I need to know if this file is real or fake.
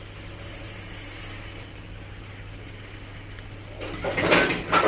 real